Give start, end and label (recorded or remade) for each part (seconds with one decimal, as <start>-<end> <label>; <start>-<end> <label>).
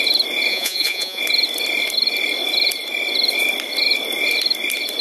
0.0-0.5 recorded; 0.5-1.2 remade; 1.2-5.0 recorded